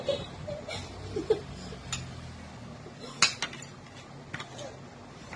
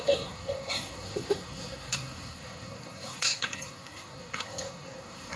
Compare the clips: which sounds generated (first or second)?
second